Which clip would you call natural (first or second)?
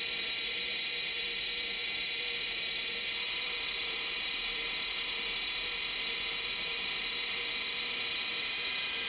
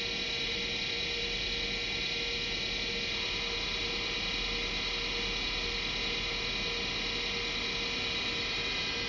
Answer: second